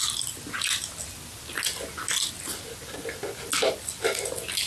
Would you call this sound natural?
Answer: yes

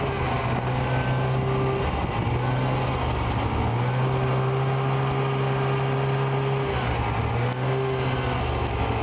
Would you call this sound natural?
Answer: yes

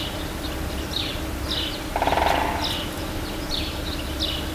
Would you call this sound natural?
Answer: yes